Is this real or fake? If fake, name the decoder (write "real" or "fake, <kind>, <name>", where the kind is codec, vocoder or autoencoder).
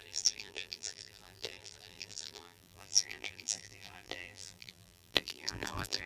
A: fake, vocoder, BigVGAN v2